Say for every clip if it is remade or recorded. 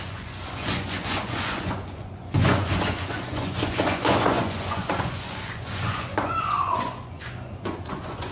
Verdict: remade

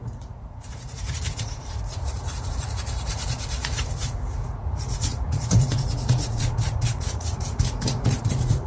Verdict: remade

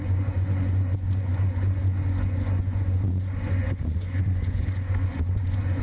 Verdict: remade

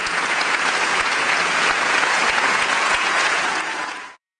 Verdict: remade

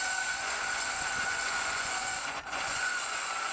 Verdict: remade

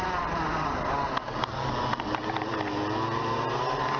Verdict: recorded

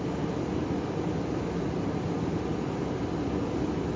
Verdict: recorded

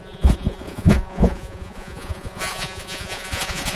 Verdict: remade